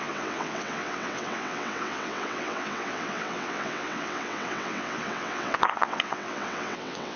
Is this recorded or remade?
remade